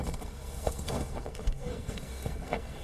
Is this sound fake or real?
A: fake